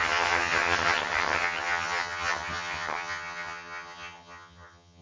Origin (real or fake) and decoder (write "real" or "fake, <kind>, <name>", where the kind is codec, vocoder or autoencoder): fake, vocoder, HiFi-GAN